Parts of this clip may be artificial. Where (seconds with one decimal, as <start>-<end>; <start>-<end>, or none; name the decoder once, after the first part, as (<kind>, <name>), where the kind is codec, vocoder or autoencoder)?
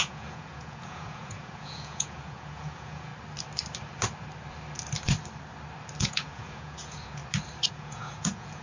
0.0-3.1 (vocoder, Vocos); 6.0-7.2; 7.7-8.6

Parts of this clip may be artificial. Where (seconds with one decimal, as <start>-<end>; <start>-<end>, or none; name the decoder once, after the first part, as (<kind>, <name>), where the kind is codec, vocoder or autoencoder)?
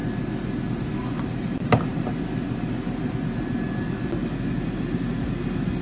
none